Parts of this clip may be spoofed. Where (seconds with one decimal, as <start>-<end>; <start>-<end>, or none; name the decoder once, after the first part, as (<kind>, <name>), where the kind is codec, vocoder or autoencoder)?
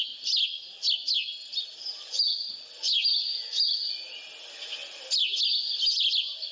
none